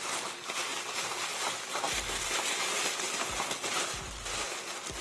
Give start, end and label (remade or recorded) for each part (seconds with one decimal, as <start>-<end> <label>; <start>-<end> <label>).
0.0-5.0 recorded